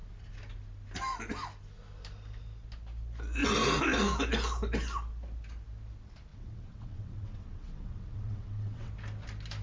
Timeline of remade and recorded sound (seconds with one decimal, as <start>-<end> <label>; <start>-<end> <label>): 0.0-6.3 recorded; 6.3-8.9 remade; 8.9-9.6 recorded